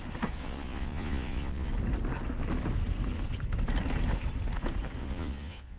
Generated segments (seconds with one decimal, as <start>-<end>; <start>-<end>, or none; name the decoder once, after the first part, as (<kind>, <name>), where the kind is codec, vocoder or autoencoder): 0.4-1.7 (vocoder, Vocos); 5.0-5.8